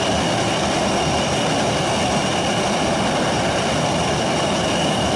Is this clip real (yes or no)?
yes